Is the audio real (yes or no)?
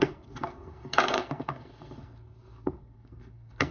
no